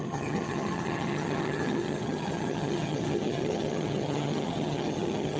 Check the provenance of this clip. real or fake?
fake